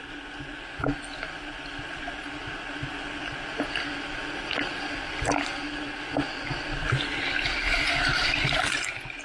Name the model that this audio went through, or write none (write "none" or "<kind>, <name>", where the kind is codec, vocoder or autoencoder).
none